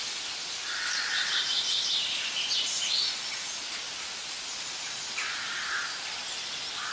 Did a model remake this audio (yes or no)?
no